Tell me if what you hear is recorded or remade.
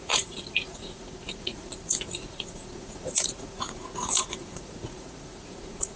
remade